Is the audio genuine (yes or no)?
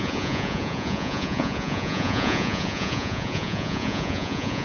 no